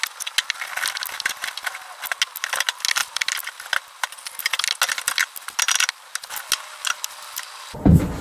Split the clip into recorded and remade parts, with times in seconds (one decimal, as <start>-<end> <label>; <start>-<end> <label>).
0.0-8.2 recorded